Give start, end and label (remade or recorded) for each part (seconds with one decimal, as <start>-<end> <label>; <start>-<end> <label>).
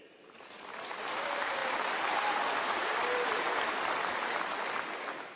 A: 0.0-5.4 recorded